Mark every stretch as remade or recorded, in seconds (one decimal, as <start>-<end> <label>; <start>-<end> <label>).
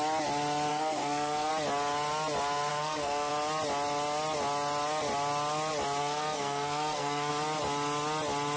0.0-0.7 recorded; 0.7-1.5 remade; 1.5-2.7 recorded; 2.7-3.3 remade; 3.3-6.0 recorded; 6.0-7.3 remade; 7.3-8.6 recorded